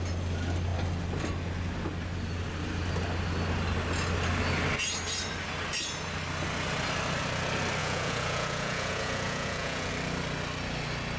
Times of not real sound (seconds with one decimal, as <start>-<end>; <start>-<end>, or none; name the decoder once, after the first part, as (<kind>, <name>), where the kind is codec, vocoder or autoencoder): 7.8-9.9 (vocoder, Vocos)